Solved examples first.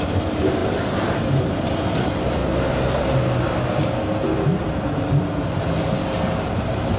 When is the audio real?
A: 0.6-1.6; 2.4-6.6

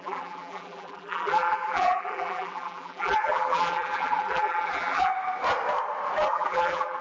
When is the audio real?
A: 5.1-6.3

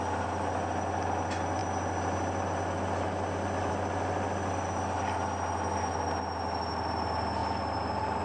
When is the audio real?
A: 0.0-8.2

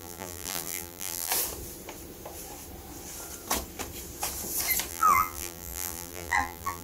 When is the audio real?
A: 1.3-4.9

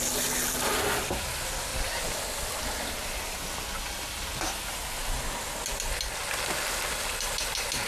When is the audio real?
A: 0.0-1.7; 2.6-5.0; 5.6-7.9

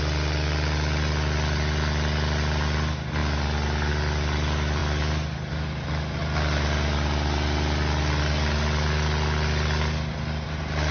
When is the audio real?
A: 0.0-10.9